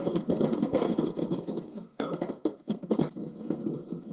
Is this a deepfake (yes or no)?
yes